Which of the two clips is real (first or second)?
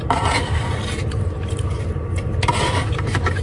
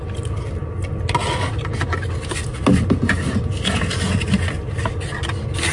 second